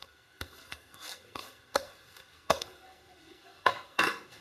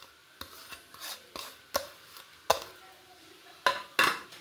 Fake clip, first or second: first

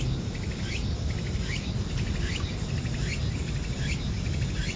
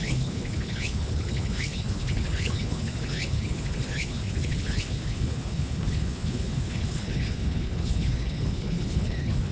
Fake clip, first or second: second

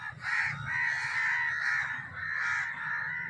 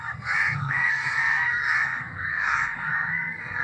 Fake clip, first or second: second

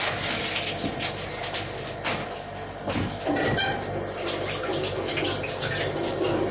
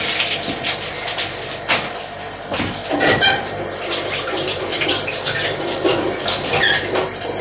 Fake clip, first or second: second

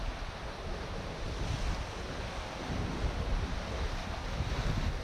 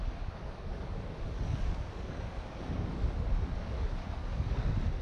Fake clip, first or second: second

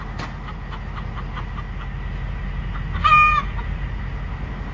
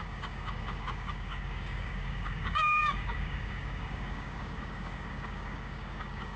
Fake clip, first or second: second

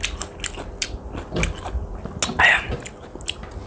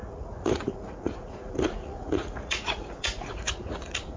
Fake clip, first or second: second